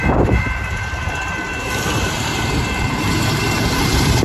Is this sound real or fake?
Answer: fake